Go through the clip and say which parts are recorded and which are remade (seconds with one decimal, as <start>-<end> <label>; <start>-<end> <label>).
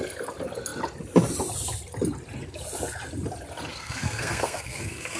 0.0-3.7 recorded; 3.7-5.2 remade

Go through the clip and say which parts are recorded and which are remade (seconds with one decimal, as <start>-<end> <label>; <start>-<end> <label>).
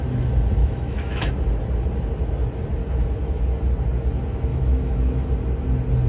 0.0-0.6 recorded; 0.6-1.3 remade; 1.3-4.5 recorded; 4.5-5.3 remade; 5.3-6.1 recorded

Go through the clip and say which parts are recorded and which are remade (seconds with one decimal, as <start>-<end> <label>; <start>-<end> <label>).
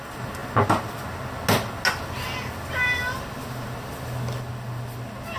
0.0-5.4 recorded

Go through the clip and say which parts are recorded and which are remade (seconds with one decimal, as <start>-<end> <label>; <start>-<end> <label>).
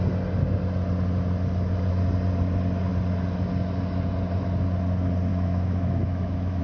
0.0-5.3 recorded; 5.3-6.6 remade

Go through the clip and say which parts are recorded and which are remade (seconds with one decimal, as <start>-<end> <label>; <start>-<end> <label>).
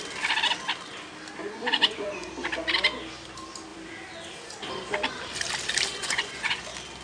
0.0-1.4 recorded; 1.4-2.3 remade; 2.3-5.9 recorded; 5.9-6.6 remade; 6.6-7.0 recorded